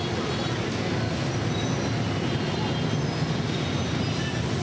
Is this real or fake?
real